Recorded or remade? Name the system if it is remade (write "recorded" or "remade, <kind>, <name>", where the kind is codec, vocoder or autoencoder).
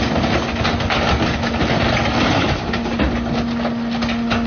recorded